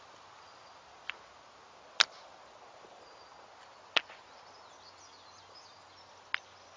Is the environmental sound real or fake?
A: real